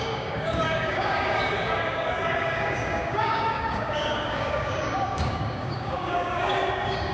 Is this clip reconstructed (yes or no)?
yes